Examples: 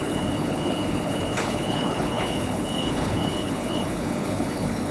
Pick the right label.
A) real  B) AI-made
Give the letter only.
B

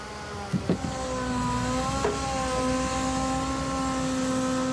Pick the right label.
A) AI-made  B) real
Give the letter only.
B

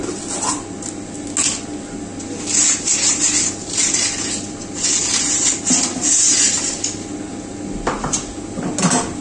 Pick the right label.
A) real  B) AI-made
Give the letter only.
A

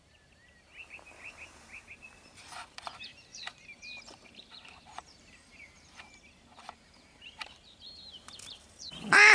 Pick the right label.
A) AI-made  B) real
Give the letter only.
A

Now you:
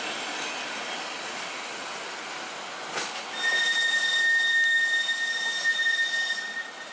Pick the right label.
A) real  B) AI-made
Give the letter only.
A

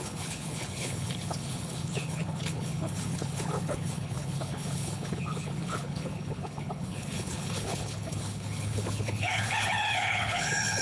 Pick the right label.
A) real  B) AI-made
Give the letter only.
B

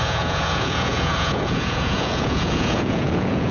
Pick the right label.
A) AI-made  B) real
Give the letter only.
A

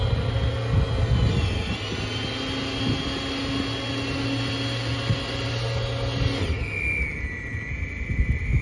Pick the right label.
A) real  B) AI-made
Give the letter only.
A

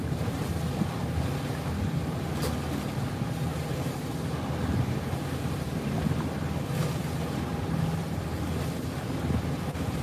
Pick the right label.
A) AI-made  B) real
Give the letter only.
A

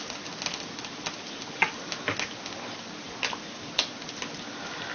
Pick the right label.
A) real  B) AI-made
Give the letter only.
A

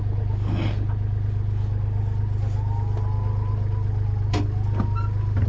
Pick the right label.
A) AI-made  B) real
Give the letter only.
B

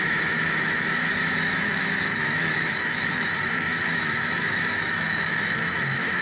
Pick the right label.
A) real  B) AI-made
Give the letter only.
B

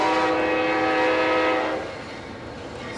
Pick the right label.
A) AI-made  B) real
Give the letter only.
B